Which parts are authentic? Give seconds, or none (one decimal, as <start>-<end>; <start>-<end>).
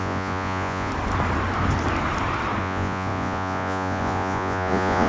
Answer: 0.9-2.6